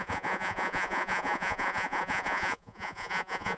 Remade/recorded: remade